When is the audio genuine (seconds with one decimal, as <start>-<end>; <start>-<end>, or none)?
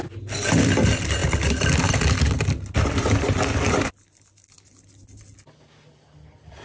0.0-6.6